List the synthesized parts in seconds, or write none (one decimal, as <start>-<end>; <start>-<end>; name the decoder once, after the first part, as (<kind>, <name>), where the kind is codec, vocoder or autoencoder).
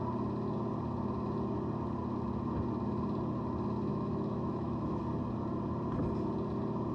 3.9-5.0 (autoencoder, DAC-VAE)